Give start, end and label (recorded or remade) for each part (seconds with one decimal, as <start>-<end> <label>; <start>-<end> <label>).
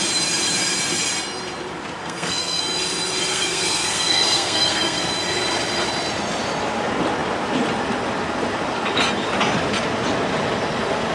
0.0-2.0 recorded; 2.0-2.6 remade; 2.6-3.3 recorded; 3.3-5.1 remade; 5.1-11.1 recorded